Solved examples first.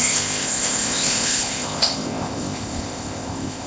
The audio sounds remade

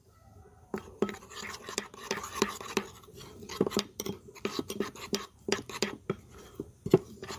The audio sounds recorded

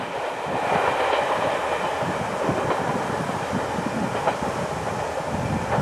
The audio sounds recorded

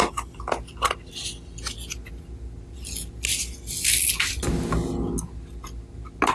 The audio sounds recorded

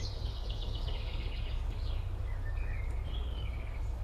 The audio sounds remade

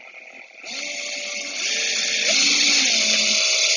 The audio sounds recorded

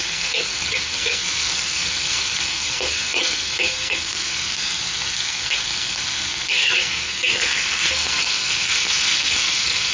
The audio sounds remade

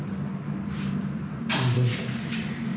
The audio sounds recorded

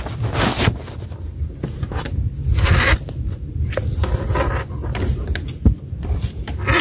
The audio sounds recorded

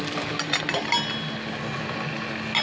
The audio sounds recorded